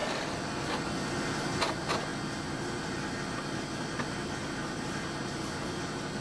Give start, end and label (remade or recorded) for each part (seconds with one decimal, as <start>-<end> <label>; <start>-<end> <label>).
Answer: 0.0-6.2 recorded